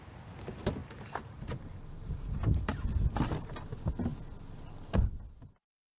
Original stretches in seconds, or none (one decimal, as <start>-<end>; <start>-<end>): 0.0-0.8; 2.8-6.0